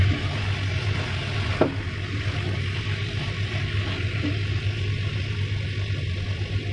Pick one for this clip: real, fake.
real